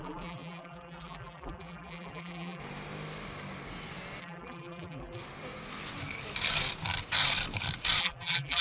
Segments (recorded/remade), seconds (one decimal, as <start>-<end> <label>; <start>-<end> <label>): 0.0-2.6 remade; 2.6-4.2 recorded; 4.2-5.2 remade; 5.2-8.0 recorded; 8.0-8.6 remade

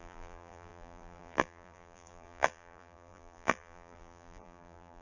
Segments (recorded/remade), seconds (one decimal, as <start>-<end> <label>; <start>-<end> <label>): 0.0-5.0 remade